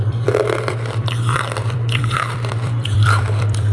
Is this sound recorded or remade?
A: remade